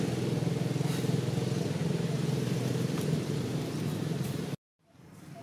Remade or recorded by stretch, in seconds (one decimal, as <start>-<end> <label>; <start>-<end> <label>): 0.0-1.8 recorded; 1.8-5.0 remade; 5.0-5.4 recorded